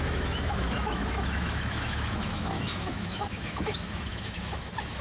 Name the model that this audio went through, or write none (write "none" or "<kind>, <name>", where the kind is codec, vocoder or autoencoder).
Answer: autoencoder, DAC-VAE